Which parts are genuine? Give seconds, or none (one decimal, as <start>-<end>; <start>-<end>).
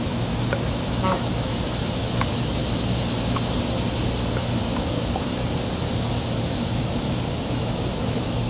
2.6-4.6; 5.3-6.1